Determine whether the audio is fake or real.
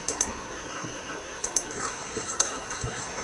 fake